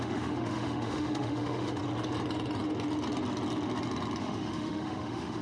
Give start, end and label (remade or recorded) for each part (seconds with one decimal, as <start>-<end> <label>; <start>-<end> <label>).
0.0-1.8 remade; 1.8-4.2 recorded; 4.2-5.4 remade